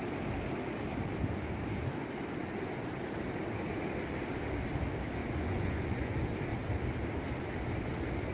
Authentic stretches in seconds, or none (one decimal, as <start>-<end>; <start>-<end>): 0.0-5.2; 6.1-8.3